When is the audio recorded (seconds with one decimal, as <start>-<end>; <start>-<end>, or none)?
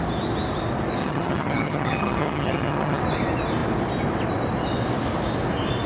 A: 0.0-1.0; 3.0-5.9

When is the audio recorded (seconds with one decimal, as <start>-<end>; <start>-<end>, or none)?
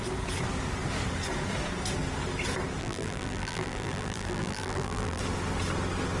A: 0.0-2.8; 5.2-6.2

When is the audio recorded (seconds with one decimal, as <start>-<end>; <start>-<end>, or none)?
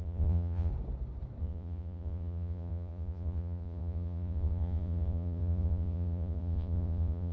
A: 0.7-1.4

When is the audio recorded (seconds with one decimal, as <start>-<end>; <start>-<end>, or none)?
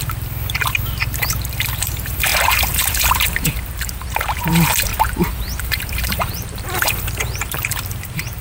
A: 4.9-5.6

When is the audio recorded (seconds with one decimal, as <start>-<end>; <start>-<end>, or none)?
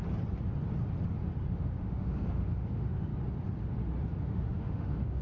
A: 0.0-1.5; 3.1-4.2